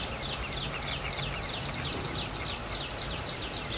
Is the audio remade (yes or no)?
no